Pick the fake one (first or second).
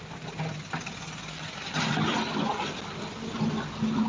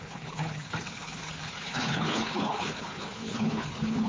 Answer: second